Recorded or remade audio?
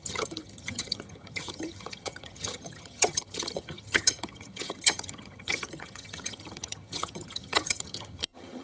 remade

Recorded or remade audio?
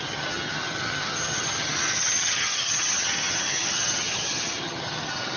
remade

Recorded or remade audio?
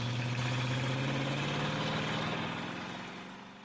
recorded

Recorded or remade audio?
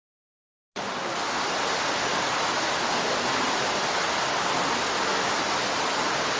recorded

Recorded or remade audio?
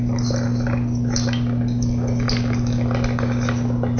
recorded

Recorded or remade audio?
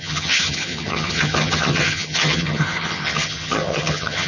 remade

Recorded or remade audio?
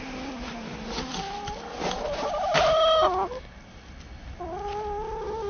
recorded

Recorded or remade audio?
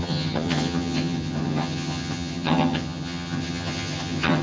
remade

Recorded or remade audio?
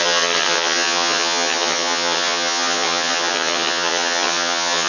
remade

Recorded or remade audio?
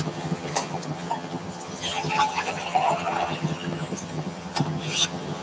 remade